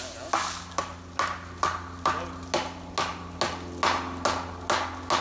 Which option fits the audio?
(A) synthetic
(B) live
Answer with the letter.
B